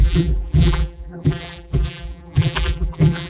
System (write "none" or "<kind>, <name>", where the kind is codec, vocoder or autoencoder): vocoder, BigVGAN v2